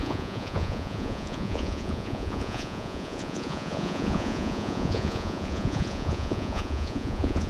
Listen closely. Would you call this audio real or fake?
fake